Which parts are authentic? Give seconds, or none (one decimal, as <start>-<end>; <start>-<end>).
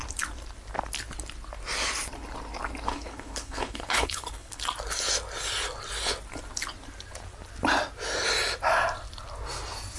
0.0-2.9; 4.6-10.0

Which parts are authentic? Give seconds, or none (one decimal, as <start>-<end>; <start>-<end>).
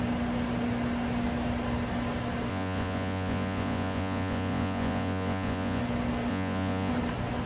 0.0-2.5; 5.8-6.3; 6.9-7.5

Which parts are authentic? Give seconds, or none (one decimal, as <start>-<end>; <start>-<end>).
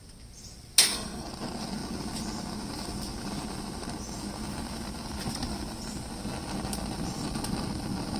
0.0-0.8; 1.3-8.2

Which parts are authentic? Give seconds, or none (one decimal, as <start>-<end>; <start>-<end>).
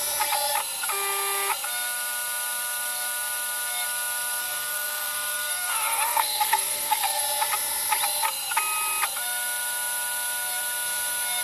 0.0-4.4; 7.2-11.4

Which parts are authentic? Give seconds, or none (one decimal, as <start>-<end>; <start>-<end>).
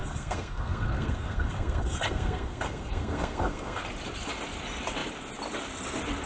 3.8-6.3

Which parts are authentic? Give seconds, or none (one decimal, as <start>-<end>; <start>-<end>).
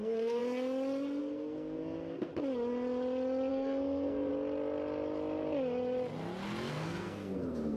0.4-1.2; 2.3-3.5; 4.3-6.7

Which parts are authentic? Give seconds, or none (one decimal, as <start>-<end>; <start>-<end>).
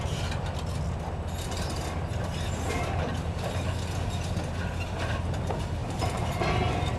0.0-5.8; 6.3-7.0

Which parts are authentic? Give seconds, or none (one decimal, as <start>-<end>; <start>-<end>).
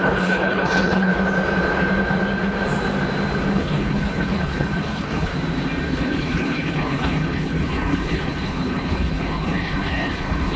1.1-3.5; 5.3-5.9